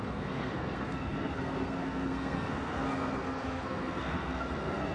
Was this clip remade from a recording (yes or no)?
yes